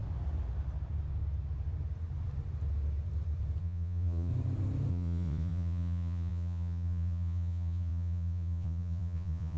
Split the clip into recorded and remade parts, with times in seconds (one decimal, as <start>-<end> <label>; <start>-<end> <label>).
0.0-3.6 recorded; 3.6-4.3 remade; 4.3-4.9 recorded; 4.9-9.6 remade